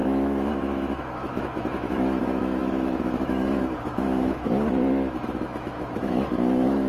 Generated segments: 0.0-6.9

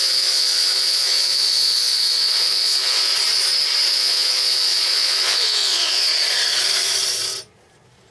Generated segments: 0.0-3.1; 3.9-6.1

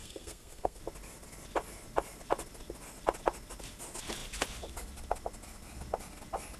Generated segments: 0.0-0.8

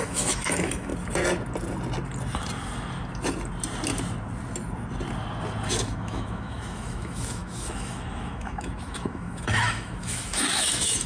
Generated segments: 0.0-0.9; 5.7-11.1